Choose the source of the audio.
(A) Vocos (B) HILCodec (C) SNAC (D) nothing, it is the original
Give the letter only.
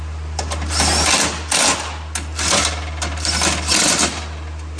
D